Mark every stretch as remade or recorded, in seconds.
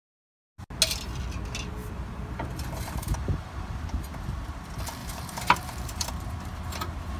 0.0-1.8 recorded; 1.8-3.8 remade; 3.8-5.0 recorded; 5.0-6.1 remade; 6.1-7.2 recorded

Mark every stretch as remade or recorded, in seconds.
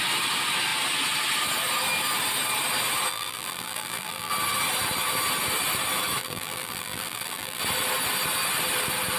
0.0-3.1 recorded; 3.1-4.3 remade; 4.3-6.2 recorded; 6.2-7.6 remade; 7.6-9.2 recorded